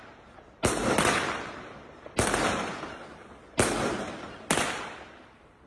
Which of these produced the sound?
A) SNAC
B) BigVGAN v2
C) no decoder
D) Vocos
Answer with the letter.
C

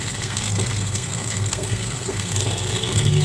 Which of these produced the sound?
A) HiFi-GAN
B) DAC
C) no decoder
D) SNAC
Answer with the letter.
D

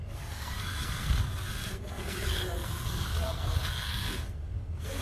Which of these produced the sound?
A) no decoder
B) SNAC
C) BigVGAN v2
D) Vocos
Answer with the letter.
B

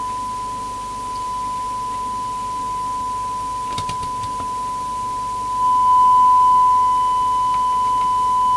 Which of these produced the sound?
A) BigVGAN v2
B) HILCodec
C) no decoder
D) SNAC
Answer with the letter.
C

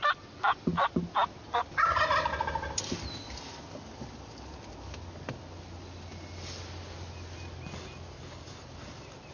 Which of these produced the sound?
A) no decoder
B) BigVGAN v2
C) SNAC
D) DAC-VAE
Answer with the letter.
A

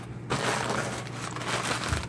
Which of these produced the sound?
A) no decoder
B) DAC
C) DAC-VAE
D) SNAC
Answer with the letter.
A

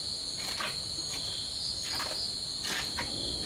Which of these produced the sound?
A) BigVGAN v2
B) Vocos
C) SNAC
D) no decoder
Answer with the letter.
D